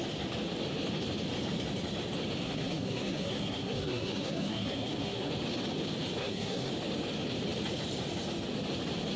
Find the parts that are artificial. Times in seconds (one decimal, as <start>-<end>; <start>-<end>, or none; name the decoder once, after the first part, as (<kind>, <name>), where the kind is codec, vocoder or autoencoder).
2.4-5.3 (codec, SNAC); 6.2-6.7